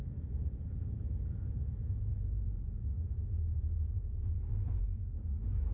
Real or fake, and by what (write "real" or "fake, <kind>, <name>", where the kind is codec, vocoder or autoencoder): fake, vocoder, Vocos